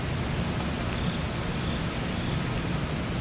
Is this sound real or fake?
real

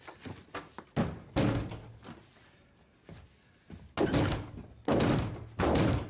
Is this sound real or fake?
real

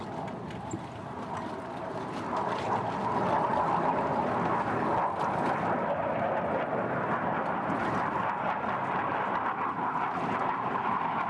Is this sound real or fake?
real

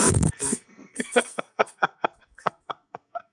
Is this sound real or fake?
fake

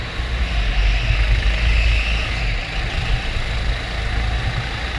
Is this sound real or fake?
real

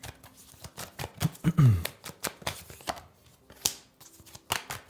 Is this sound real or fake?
real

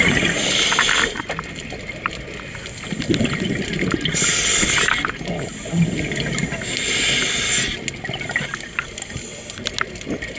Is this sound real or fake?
real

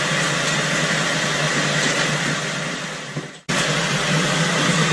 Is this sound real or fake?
real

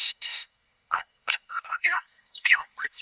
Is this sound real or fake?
fake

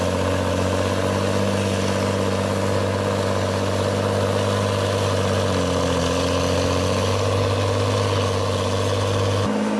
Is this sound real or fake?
real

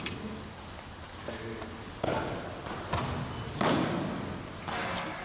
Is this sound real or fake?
real